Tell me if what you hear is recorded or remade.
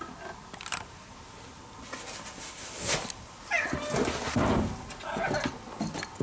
recorded